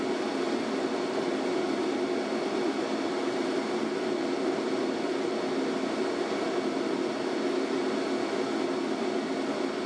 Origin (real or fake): real